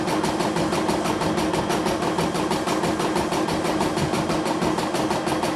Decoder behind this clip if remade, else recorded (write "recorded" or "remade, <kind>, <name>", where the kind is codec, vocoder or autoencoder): recorded